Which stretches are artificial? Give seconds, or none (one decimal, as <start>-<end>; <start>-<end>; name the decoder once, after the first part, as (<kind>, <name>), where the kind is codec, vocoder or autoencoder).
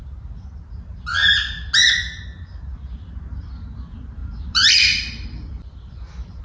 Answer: 4.2-6.4 (vocoder, BigVGAN v2)